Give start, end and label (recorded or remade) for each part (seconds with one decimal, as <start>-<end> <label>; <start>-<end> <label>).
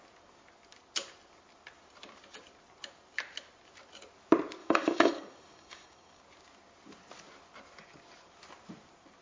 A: 0.0-4.6 recorded; 4.6-6.2 remade; 6.2-9.2 recorded